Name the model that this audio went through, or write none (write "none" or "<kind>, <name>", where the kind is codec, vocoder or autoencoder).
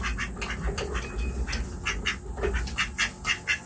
none